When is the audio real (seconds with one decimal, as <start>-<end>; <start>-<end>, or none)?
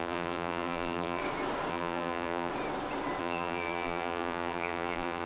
1.2-1.7; 2.5-3.2